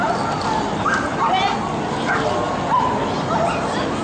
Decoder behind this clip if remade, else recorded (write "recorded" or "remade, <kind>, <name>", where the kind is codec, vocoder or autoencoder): recorded